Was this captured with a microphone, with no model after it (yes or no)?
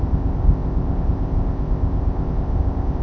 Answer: no